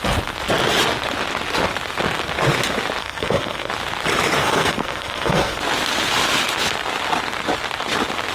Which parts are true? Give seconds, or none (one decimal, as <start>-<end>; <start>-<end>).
0.0-3.0; 3.7-4.4; 5.6-8.3